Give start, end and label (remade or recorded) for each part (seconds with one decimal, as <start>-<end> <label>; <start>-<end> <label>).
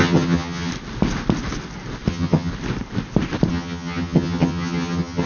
0.0-0.7 remade; 0.7-2.1 recorded; 2.1-2.5 remade; 2.5-3.5 recorded; 3.5-5.3 remade